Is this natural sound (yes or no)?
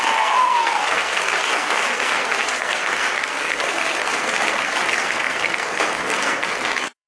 no